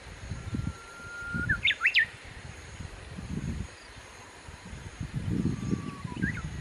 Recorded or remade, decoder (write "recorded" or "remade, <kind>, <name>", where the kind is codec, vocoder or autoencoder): remade, vocoder, BigVGAN v2